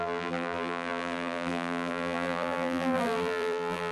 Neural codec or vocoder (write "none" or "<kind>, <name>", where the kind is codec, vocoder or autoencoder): vocoder, BigVGAN v2